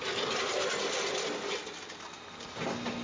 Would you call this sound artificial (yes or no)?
no